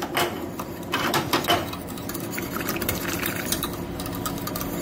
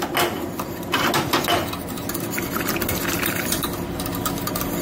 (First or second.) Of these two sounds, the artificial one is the first